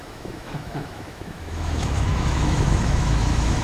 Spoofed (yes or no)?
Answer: yes